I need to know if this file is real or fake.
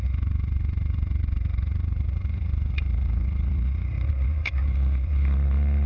fake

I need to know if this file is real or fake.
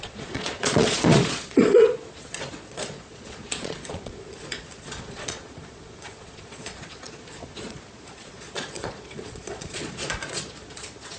fake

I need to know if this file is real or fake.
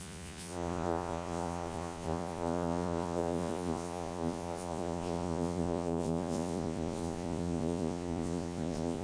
fake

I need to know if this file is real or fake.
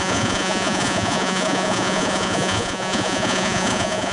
fake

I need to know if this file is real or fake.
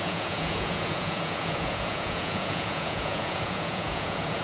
fake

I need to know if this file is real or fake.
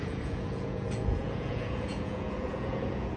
fake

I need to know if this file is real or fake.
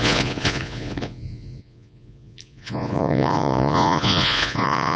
fake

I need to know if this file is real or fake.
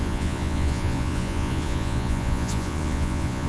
fake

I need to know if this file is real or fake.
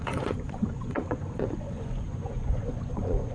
fake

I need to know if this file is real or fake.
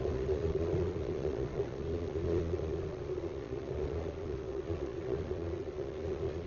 fake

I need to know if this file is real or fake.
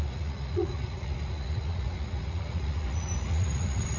fake